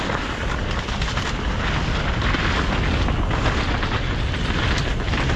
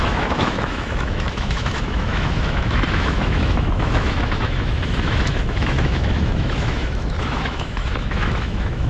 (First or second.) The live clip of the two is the first